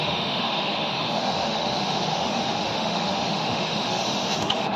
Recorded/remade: remade